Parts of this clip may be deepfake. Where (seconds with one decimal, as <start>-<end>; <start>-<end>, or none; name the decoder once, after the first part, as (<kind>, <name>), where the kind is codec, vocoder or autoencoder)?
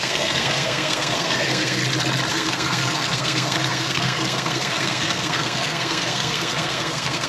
0.0-1.8 (codec, SNAC); 2.3-7.3